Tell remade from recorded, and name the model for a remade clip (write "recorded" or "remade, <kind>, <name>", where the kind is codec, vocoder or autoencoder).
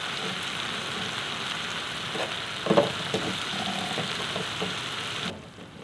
recorded